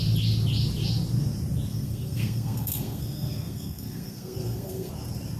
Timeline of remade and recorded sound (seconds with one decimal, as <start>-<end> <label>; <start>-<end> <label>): 0.0-1.7 recorded; 1.7-4.9 remade; 4.9-5.4 recorded